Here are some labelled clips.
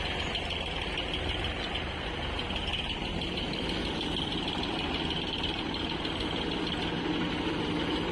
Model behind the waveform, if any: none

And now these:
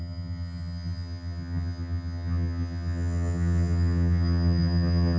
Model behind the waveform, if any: vocoder, HiFi-GAN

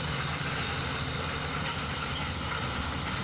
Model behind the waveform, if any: none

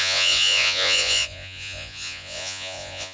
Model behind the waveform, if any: vocoder, Vocos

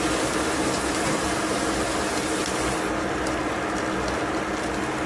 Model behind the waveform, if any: none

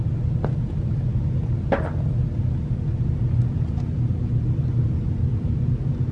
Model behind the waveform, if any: none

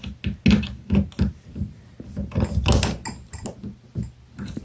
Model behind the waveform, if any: none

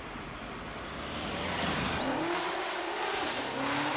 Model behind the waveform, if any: none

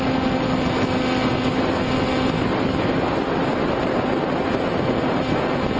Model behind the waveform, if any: none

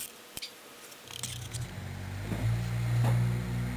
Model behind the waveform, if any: none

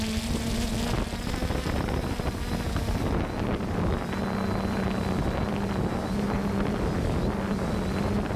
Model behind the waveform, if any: none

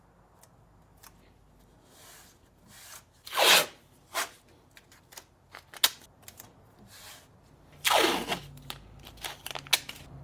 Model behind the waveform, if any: none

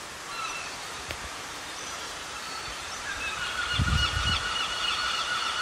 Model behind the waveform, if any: vocoder, BigVGAN v2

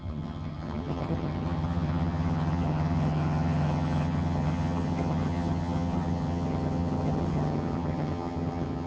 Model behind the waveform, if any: vocoder, HiFi-GAN